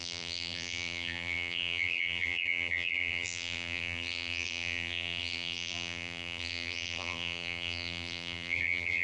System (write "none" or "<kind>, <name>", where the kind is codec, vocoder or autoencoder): vocoder, BigVGAN v2